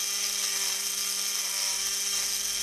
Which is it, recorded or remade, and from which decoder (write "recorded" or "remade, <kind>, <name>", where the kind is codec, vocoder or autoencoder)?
recorded